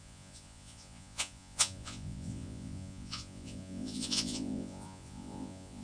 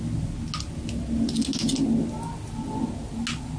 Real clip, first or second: second